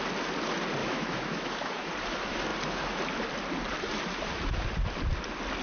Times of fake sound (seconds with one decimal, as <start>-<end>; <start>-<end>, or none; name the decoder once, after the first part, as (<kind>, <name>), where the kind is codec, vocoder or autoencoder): 0.8-1.9 (autoencoder, DAC-VAE)